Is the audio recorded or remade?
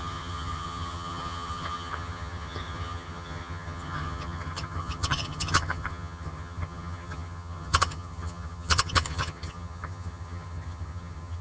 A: remade